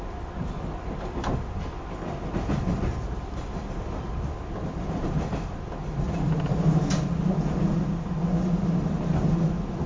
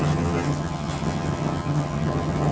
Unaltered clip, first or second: first